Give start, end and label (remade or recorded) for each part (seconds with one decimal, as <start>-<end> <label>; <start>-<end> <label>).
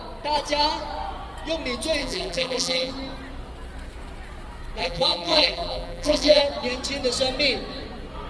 0.0-2.0 recorded; 2.0-2.9 remade; 2.9-4.8 recorded; 4.8-6.4 remade; 6.4-8.3 recorded